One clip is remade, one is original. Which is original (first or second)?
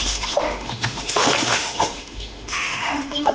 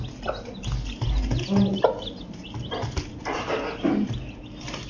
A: second